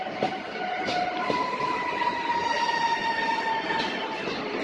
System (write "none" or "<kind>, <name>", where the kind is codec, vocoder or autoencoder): none